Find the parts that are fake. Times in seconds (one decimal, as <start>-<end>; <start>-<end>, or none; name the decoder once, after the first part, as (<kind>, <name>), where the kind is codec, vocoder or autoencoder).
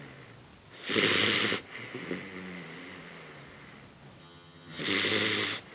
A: 4.2-4.8 (vocoder, HiFi-GAN)